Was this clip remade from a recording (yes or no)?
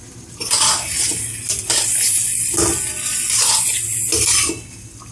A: no